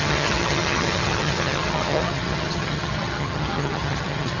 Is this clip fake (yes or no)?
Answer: yes